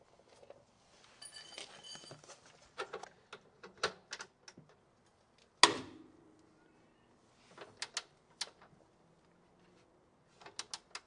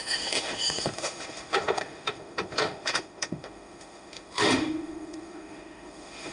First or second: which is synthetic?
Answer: second